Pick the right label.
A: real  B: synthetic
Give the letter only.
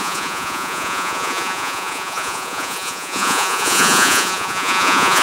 B